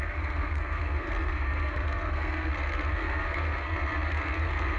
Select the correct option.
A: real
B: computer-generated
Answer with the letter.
B